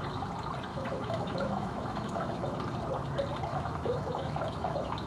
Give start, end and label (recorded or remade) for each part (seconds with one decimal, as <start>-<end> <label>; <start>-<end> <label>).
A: 0.0-0.7 recorded; 0.7-2.6 remade; 2.6-3.5 recorded; 3.5-5.1 remade